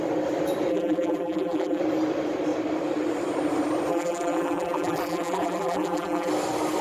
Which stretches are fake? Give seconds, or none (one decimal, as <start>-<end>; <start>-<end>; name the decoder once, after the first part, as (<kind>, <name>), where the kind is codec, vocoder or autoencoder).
0.7-1.8 (vocoder, BigVGAN v2); 3.9-6.3

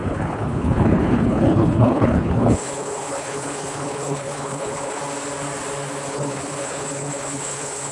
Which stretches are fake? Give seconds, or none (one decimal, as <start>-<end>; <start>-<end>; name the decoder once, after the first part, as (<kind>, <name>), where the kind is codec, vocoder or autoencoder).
0.0-5.0 (codec, HILCodec); 6.1-7.9

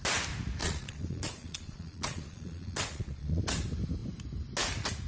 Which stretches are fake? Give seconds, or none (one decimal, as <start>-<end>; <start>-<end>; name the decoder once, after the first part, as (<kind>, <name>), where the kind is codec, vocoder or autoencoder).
0.6-3.4 (vocoder, Vocos)